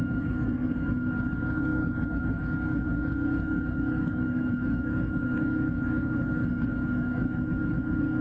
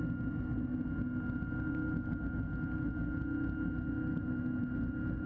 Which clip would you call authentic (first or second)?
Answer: second